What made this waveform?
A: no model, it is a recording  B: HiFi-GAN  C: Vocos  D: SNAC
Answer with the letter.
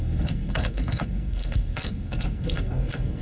D